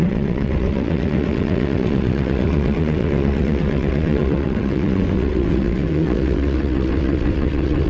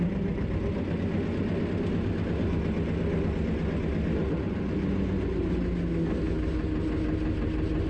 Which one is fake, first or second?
first